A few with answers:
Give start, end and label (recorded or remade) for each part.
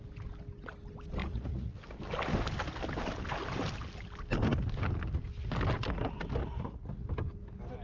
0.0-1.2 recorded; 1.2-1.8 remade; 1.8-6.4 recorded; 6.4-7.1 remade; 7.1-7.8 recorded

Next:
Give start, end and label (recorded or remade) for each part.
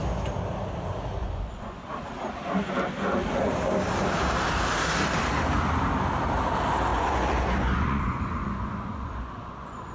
0.0-1.2 recorded; 1.2-1.9 remade; 1.9-6.9 recorded; 6.9-9.9 remade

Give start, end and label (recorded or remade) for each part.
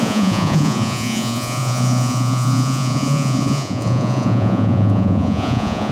0.0-5.9 remade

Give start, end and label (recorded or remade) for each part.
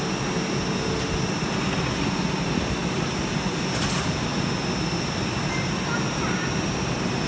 0.0-7.3 recorded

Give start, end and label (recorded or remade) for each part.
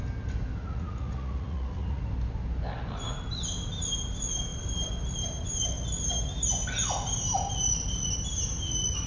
0.0-0.6 recorded; 0.6-2.0 remade; 2.0-9.1 recorded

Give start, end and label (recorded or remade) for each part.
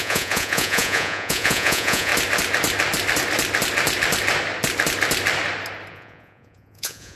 0.0-2.1 remade; 2.1-5.9 recorded; 5.9-7.2 remade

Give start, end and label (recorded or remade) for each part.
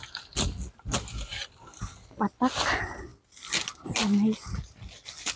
0.0-5.4 recorded